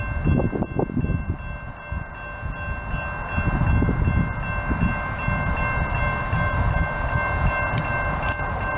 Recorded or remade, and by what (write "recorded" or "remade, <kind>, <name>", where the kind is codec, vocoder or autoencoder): recorded